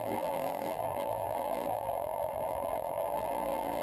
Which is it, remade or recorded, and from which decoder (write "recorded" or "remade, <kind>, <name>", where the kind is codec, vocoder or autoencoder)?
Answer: remade, vocoder, BigVGAN v2